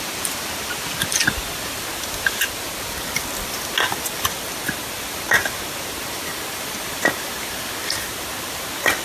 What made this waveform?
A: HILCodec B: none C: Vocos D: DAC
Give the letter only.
B